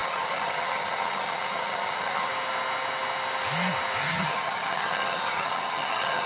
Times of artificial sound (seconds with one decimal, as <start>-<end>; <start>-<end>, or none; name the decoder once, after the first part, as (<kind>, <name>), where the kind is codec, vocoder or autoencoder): 0.0-2.3 (vocoder, HiFi-GAN); 4.0-6.3